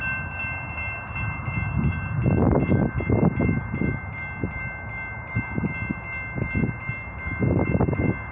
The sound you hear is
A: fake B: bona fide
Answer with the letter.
B